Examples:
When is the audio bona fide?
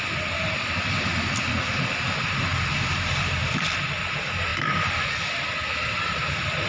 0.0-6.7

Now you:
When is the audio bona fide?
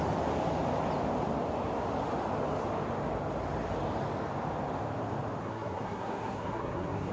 0.0-5.4